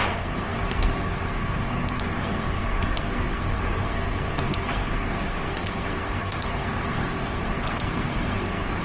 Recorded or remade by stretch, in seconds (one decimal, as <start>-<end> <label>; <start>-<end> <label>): 0.0-8.8 remade